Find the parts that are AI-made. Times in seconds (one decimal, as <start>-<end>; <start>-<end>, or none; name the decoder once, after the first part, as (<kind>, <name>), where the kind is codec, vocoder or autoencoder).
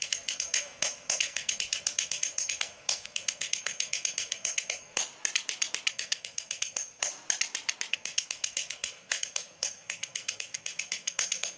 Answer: 0.0-5.0 (codec, SNAC); 5.9-7.1; 7.9-11.6